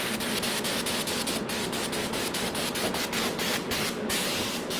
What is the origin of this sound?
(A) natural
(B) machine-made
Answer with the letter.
B